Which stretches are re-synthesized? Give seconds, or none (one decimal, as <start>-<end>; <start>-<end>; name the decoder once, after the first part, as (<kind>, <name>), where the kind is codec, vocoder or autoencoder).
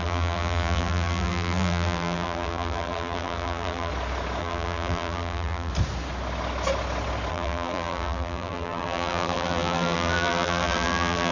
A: 0.0-3.9 (vocoder, BigVGAN v2); 4.4-5.7; 7.3-11.3